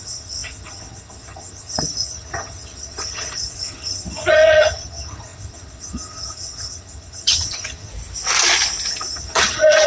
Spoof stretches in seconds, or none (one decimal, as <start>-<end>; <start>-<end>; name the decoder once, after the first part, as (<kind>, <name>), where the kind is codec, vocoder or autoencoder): 0.0-7.9 (vocoder, HiFi-GAN); 8.9-9.9